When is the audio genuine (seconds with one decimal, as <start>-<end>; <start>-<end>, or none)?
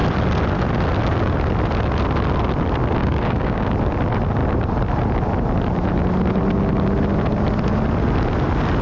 0.0-3.0; 3.7-8.8